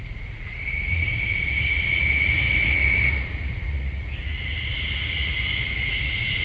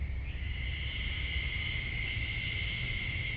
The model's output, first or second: first